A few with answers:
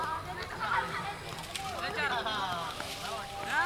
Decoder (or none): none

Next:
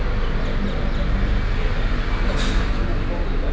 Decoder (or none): none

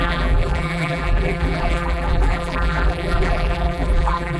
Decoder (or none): vocoder, BigVGAN v2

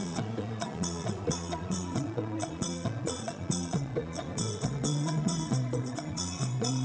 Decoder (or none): vocoder, Vocos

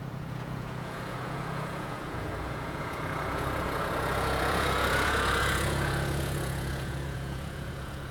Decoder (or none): vocoder, Vocos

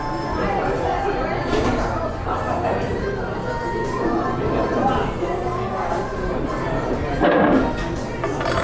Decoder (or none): none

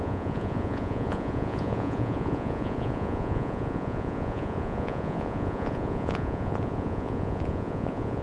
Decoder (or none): vocoder, Vocos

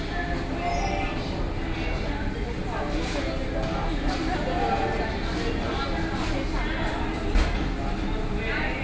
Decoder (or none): none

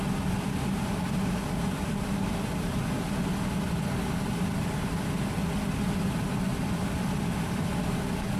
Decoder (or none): none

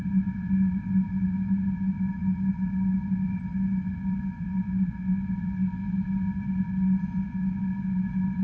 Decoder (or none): none